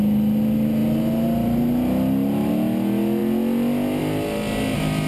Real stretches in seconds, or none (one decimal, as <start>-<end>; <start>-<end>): 0.0-5.1